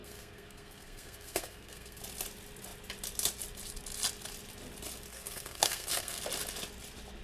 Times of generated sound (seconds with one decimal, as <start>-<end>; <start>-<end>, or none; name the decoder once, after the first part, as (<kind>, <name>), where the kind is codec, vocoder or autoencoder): 0.0-2.0 (codec, SNAC); 5.1-6.2